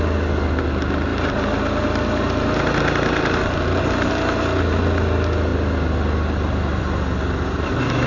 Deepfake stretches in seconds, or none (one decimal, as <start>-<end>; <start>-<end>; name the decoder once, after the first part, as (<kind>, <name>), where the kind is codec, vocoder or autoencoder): none